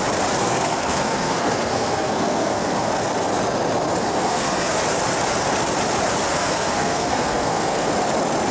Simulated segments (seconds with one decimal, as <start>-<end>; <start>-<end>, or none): 0.4-2.9; 4.0-4.7; 6.3-7.9